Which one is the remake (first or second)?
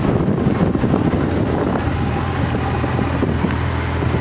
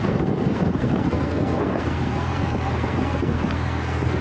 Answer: second